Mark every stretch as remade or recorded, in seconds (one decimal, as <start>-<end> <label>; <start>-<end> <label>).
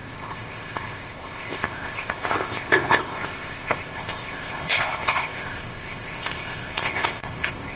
0.0-7.8 remade